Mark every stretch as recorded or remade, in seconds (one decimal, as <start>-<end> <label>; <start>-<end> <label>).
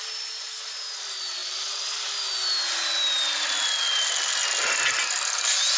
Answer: 0.0-5.8 recorded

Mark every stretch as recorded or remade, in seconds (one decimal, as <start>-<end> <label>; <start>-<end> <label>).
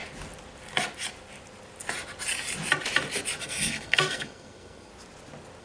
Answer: 0.0-3.4 recorded; 3.4-4.9 remade; 4.9-5.6 recorded